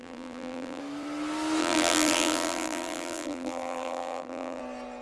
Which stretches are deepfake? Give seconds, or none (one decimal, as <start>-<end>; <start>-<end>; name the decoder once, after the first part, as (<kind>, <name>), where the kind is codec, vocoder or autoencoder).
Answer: 0.0-0.8 (vocoder, BigVGAN v2); 1.6-4.6